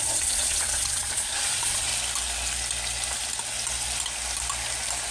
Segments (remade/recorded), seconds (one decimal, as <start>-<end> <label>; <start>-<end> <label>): 0.0-1.9 remade; 1.9-5.1 recorded